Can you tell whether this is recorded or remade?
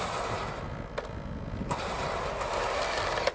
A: recorded